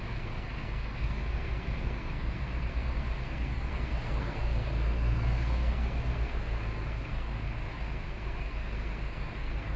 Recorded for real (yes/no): no